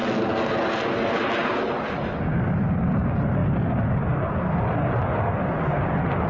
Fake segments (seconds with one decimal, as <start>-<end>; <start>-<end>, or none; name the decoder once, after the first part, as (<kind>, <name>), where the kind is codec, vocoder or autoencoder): 1.7-3.4 (vocoder, BigVGAN v2); 3.9-6.3